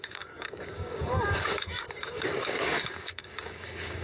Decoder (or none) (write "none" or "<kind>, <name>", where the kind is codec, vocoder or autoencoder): codec, DAC